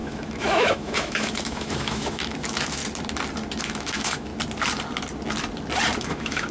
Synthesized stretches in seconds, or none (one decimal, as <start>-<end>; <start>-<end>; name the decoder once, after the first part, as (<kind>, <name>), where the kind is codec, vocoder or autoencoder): 0.0-2.8 (autoencoder, DAC-VAE); 3.6-4.3; 6.0-6.5